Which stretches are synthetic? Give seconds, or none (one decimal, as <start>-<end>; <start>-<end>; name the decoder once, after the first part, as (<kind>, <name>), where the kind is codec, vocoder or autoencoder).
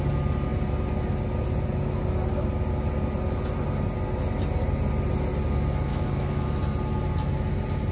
5.9-6.6 (autoencoder, DAC-VAE)